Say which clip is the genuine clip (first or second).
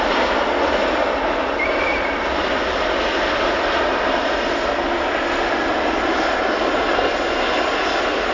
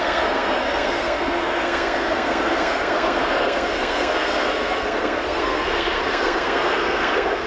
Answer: first